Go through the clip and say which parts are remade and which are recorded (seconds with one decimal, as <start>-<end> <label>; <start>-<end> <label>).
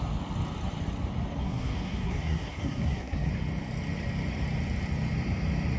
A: 0.0-1.4 recorded; 1.4-3.3 remade; 3.3-5.8 recorded